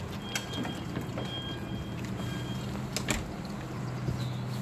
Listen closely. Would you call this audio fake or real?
real